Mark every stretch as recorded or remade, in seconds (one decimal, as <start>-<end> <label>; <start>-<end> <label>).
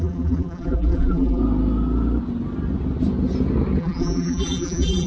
0.0-1.4 remade; 1.4-3.8 recorded; 3.8-5.1 remade